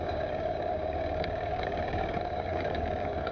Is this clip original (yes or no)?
no